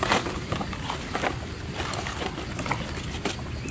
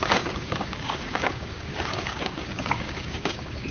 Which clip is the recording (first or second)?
first